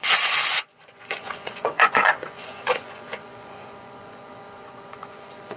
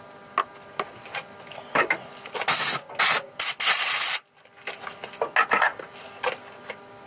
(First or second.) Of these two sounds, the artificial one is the first